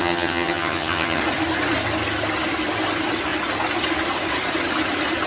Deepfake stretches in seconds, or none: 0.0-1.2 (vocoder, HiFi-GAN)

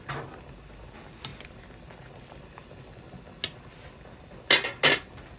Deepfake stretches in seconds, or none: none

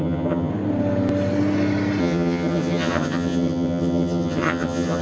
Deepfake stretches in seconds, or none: 0.0-0.5 (vocoder, HiFi-GAN); 2.0-5.0

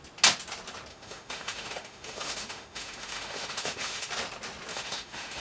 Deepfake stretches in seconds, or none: 0.9-4.1 (autoencoder, DAC-VAE); 4.7-5.4

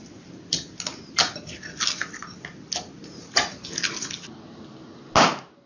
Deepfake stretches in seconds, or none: none

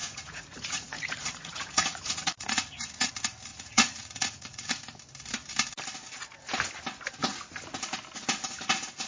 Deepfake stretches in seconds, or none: 0.0-3.1 (vocoder, Vocos); 3.5-4.8